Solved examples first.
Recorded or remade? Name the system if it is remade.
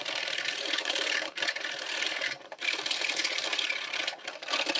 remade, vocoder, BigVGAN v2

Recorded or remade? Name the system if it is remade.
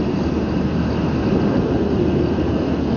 recorded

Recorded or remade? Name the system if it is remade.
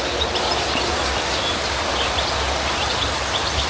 recorded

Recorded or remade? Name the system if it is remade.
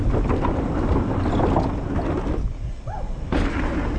recorded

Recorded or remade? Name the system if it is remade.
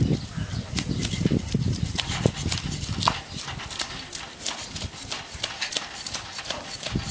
recorded